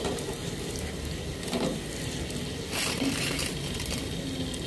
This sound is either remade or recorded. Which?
recorded